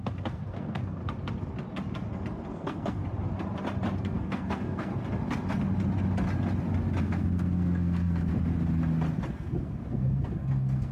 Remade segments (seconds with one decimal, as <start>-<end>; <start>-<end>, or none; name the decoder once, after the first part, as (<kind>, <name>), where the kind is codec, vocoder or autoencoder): 0.0-1.0 (codec, SNAC); 2.5-3.0; 4.0-4.9; 7.0-8.3; 9.3-10.9